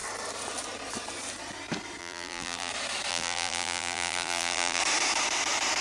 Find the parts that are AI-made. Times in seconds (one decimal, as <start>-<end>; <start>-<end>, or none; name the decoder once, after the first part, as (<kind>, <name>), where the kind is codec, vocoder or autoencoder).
2.0-2.7 (vocoder, BigVGAN v2); 3.1-4.8